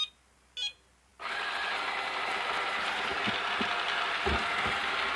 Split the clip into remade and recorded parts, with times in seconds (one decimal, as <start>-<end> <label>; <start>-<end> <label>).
0.0-5.2 recorded